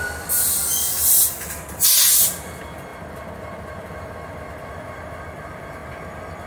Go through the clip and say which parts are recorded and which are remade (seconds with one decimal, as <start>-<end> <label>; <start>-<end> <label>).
0.0-6.5 recorded